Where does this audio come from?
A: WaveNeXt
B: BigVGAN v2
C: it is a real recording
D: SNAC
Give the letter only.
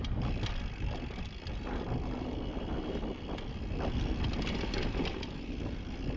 C